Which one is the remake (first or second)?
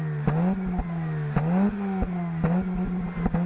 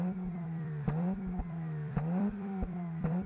second